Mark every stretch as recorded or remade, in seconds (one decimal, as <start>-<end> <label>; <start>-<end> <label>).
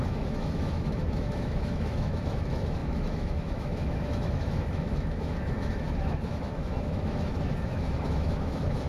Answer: 0.0-8.9 remade